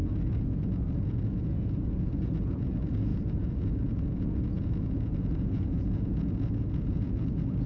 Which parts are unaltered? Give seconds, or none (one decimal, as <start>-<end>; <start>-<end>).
none